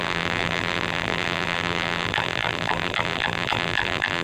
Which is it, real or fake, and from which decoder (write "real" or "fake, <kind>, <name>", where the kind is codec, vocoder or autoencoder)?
fake, vocoder, BigVGAN v2